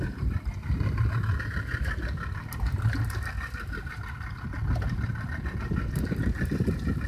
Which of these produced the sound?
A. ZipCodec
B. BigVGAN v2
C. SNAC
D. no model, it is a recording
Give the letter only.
D